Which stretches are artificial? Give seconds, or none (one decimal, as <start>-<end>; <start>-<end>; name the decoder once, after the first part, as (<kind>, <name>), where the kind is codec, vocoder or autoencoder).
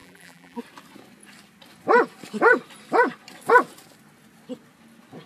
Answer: 0.0-0.6 (vocoder, BigVGAN v2)